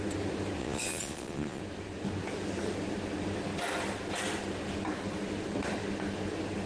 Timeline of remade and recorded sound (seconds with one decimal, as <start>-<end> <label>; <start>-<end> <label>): 0.0-0.6 recorded; 0.6-1.6 remade; 1.6-6.7 recorded